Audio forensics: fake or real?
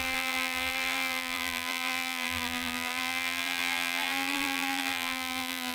fake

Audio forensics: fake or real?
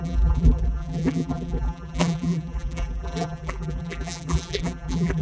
fake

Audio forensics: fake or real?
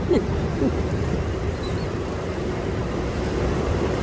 fake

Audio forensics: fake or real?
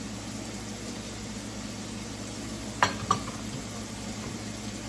real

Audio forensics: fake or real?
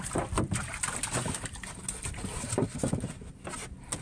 real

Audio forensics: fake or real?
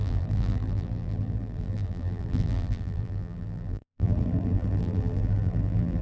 fake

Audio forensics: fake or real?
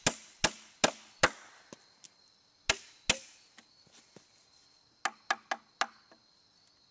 real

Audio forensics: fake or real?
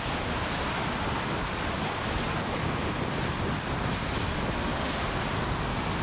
real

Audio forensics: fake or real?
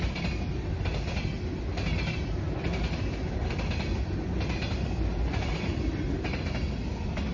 real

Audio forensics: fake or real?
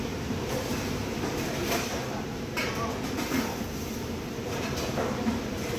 fake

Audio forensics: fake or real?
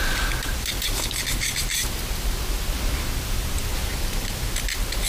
fake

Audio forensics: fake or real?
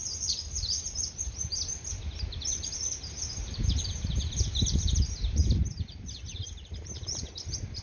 fake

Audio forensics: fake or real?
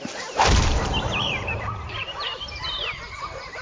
fake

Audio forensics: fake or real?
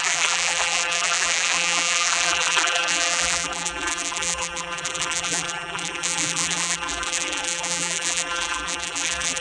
fake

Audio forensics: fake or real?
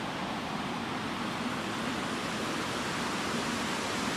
real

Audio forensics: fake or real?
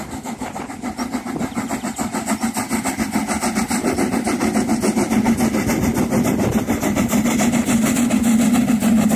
real